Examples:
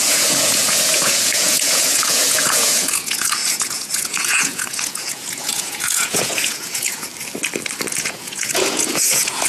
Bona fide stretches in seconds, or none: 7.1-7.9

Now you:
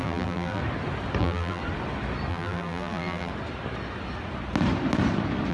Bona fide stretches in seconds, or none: 0.6-1.2; 1.6-2.3; 3.3-5.5

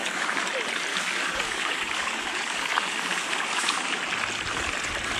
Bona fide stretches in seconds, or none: 0.5-0.9; 4.0-5.2

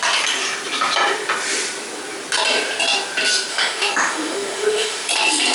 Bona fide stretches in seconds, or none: 0.0-3.5; 5.1-5.5

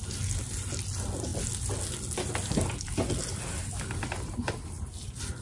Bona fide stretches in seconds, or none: 0.0-5.4

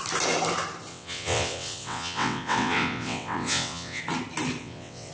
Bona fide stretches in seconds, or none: 0.0-0.9; 4.0-4.6